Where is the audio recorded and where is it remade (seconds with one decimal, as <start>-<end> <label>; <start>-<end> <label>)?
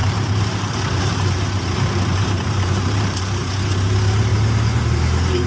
0.0-0.8 remade; 0.8-2.1 recorded; 2.1-3.2 remade; 3.2-5.5 recorded